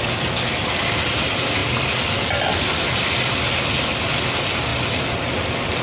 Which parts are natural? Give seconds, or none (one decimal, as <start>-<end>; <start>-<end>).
0.0-1.6; 4.3-5.8

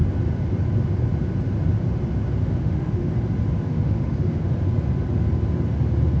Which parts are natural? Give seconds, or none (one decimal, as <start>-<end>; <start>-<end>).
0.0-2.4; 3.1-3.7; 4.4-6.2

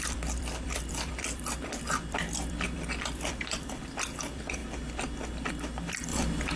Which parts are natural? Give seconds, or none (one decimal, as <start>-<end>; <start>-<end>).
4.6-5.5

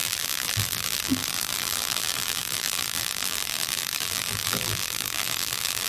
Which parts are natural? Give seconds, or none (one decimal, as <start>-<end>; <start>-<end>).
none

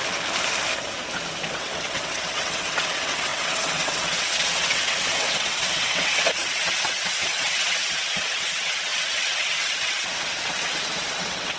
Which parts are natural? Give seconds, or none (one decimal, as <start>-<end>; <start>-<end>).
0.0-1.5

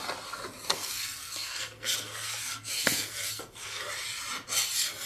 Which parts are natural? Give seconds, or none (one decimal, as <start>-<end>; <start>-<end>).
0.0-0.7; 3.8-5.1